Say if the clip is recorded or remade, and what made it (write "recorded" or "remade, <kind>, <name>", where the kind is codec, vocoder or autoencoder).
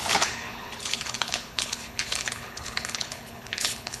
remade, codec, HILCodec